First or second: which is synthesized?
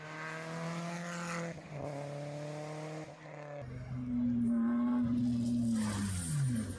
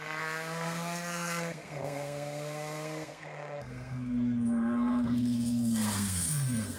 second